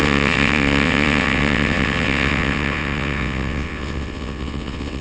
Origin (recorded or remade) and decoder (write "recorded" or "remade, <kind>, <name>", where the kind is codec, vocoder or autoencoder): remade, vocoder, WaveNeXt